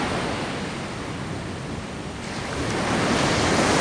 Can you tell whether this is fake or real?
real